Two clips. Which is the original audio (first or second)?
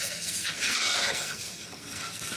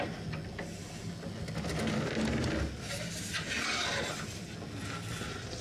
second